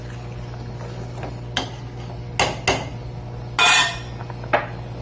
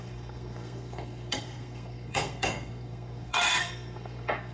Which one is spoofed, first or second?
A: second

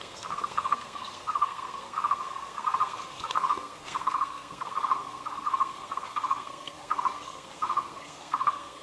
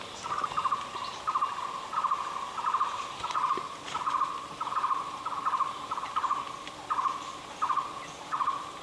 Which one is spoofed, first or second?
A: first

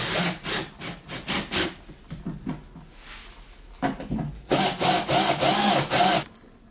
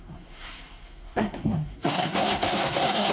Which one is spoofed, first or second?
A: second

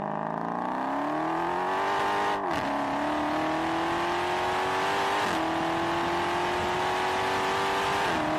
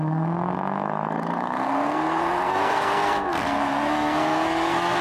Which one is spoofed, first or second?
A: second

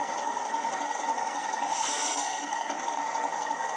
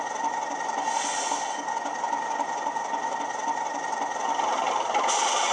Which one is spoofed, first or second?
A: first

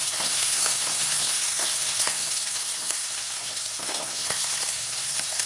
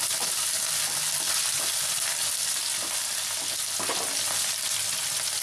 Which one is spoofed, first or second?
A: first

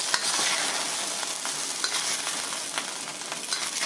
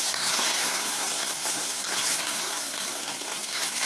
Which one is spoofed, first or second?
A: second